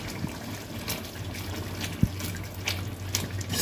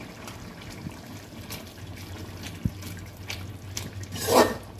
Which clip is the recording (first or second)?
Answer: first